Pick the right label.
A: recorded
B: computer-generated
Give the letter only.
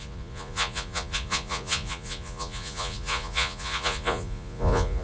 B